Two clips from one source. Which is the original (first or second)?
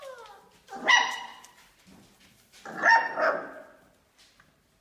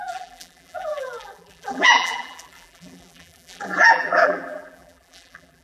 first